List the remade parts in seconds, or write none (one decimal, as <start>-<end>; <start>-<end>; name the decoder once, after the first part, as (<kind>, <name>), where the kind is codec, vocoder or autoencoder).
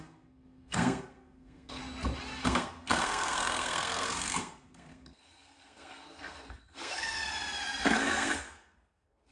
0.0-1.8 (codec, SNAC); 2.4-7.3; 7.8-9.3